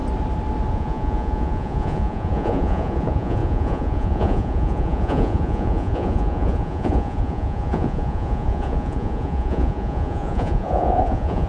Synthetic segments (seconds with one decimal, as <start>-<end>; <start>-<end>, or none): 0.7-11.5